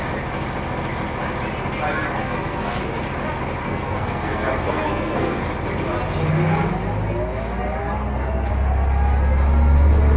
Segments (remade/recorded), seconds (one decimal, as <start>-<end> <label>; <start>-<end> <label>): 0.0-2.2 recorded; 2.2-2.8 remade; 2.8-3.6 recorded; 3.6-5.4 remade; 5.4-7.8 recorded; 7.8-8.5 remade; 8.5-10.2 recorded